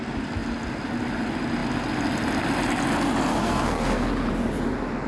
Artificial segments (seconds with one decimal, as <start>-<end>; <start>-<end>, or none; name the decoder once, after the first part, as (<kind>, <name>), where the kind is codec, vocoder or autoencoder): 3.3-4.1 (codec, SNAC)